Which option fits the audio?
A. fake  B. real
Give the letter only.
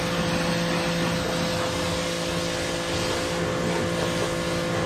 B